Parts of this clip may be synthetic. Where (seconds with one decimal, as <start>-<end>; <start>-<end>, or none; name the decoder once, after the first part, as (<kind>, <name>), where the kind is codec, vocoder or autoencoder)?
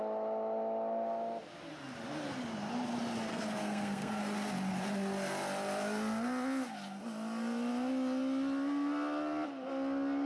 3.3-4.2 (codec, SNAC)